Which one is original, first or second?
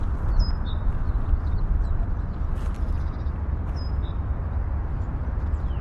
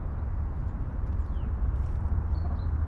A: first